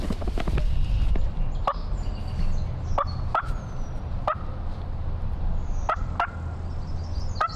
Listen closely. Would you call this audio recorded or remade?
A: recorded